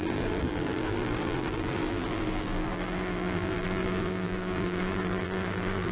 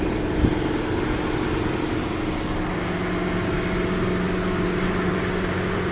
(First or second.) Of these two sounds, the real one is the second